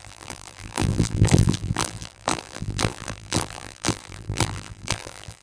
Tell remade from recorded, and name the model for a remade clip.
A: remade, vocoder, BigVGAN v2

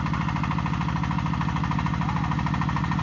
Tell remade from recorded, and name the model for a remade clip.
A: recorded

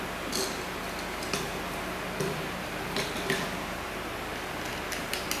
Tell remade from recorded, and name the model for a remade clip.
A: recorded